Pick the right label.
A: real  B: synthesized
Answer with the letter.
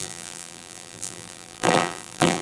B